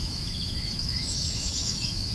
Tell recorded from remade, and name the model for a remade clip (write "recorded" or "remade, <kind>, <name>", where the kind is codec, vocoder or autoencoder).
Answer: remade, autoencoder, DAC-VAE